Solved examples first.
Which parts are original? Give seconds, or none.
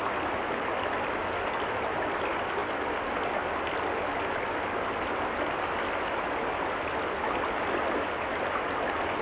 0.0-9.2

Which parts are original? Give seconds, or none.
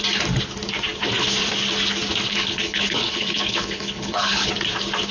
0.0-2.3; 4.5-5.1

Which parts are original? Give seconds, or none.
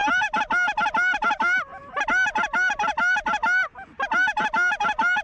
0.0-5.2